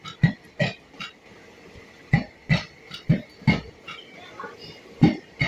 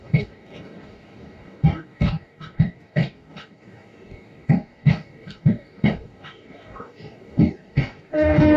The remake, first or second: second